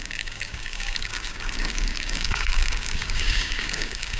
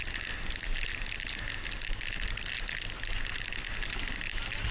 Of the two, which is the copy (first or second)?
first